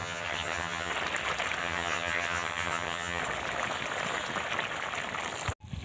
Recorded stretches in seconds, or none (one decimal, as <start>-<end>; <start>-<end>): 0.9-1.6; 3.2-5.8